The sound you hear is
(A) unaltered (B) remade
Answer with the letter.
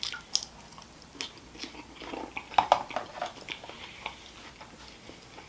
A